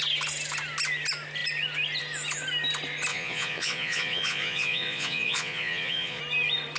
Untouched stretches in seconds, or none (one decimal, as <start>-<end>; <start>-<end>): 0.0-3.1; 6.2-6.8